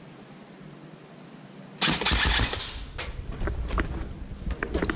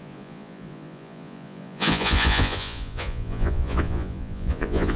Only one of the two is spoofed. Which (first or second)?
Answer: second